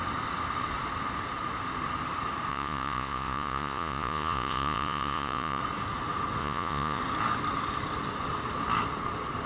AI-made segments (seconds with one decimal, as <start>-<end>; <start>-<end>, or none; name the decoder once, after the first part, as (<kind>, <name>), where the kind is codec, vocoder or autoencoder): 2.5-5.6 (vocoder, Vocos); 6.4-7.0